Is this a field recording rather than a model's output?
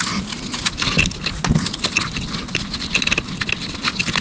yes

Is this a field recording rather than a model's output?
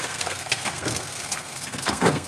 no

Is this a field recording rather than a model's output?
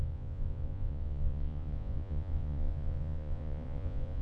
no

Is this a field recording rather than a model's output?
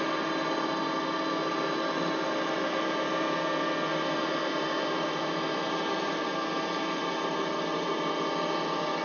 yes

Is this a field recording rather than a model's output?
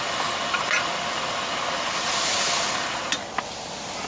yes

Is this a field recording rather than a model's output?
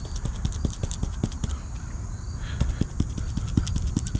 yes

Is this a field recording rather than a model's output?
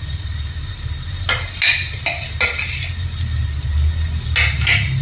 yes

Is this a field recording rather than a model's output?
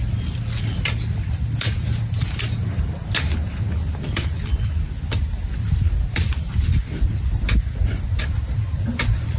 yes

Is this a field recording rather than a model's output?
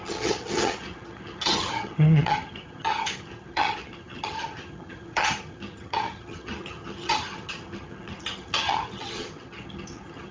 no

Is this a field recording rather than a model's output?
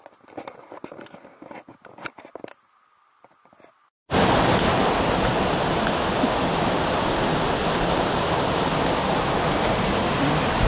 yes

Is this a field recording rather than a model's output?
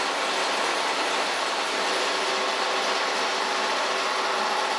yes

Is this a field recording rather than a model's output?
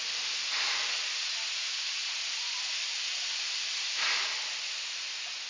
yes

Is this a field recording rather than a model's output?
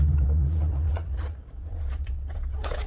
no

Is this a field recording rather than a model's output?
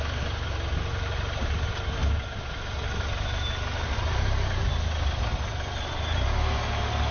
yes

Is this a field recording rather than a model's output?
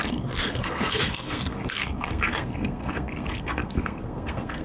no